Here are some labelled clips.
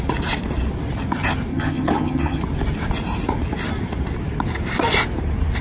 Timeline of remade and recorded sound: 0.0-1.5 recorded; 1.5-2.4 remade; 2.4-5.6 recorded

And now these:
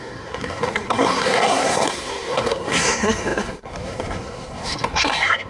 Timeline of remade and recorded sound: 0.0-5.5 remade

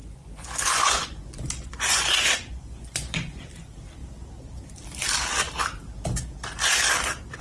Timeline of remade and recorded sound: 0.0-3.4 remade; 3.4-7.4 recorded

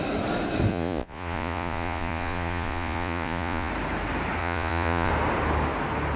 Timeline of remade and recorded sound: 0.0-0.7 recorded; 0.7-3.7 remade; 3.7-4.4 recorded; 4.4-5.1 remade; 5.1-6.2 recorded